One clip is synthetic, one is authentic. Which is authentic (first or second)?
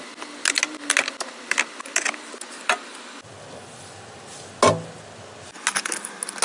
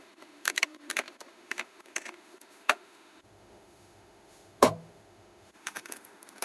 first